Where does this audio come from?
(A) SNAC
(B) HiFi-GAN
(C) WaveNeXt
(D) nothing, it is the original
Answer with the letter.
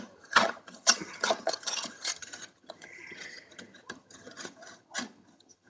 B